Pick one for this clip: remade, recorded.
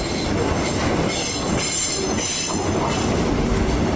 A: recorded